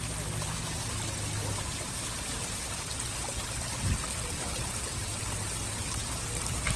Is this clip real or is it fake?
real